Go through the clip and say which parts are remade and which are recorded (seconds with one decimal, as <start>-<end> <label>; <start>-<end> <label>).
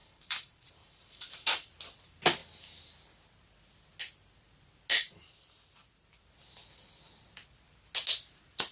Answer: 0.0-1.7 remade; 1.7-8.7 recorded